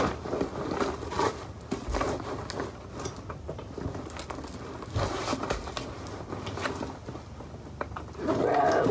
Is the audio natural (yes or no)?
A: yes